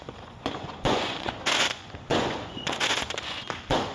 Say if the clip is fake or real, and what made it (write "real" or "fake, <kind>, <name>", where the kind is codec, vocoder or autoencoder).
fake, vocoder, Vocos